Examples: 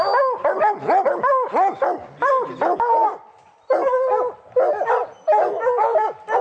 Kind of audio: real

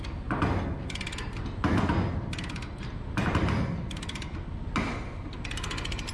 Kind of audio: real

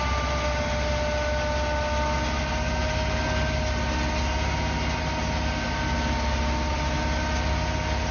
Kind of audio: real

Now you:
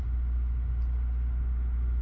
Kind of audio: real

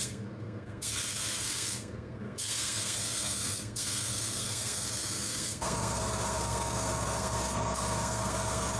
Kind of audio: fake